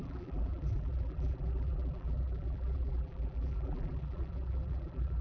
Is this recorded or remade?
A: remade